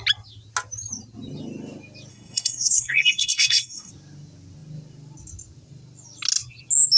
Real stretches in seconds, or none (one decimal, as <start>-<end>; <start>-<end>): 0.0-2.1; 3.9-7.0